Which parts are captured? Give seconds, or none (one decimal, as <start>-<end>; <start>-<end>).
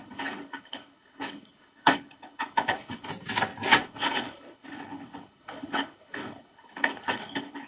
3.1-3.8